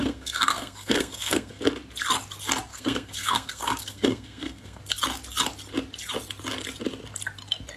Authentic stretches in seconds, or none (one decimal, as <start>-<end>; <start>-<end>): 1.6-2.7; 4.8-7.8